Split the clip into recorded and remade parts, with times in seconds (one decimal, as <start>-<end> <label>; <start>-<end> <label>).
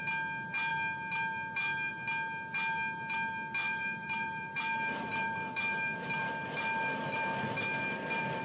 0.0-3.6 recorded; 3.6-8.4 remade